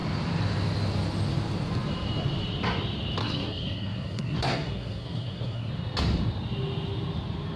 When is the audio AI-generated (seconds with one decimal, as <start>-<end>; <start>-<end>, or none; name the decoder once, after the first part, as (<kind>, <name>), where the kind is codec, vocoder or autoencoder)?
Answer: 3.2-5.7 (codec, SNAC)